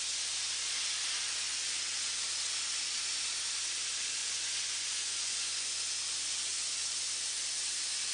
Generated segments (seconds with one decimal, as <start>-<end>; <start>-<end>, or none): 4.2-5.9